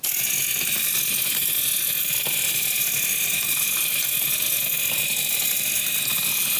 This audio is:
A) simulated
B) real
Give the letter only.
B